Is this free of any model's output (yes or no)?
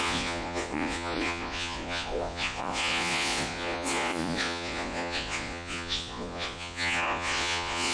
no